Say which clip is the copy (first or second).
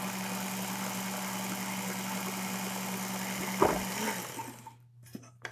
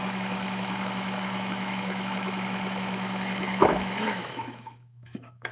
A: second